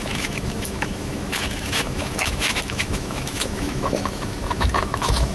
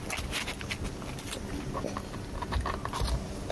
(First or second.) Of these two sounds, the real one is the second